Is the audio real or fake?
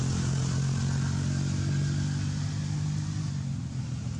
real